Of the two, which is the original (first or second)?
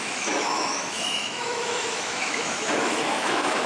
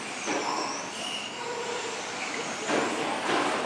second